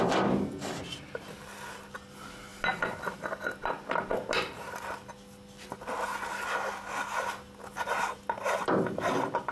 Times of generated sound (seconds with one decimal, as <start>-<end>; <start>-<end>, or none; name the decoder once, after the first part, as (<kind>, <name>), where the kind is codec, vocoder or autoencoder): none